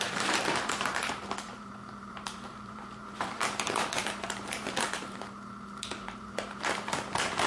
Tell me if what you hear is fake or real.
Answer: fake